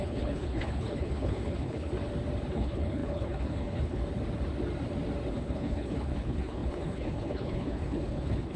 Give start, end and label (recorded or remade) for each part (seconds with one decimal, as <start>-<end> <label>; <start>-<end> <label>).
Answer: 0.0-1.9 remade; 1.9-2.5 recorded; 2.5-4.0 remade; 4.0-5.3 recorded; 5.3-8.6 remade